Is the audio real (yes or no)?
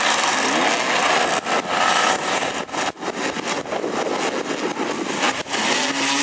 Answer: yes